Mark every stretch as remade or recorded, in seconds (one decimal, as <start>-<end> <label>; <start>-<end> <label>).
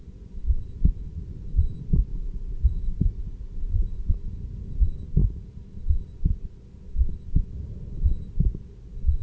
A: 0.0-2.1 recorded; 2.1-4.1 remade; 4.1-9.2 recorded